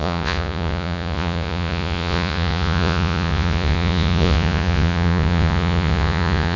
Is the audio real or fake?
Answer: fake